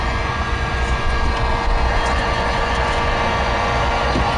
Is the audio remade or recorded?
remade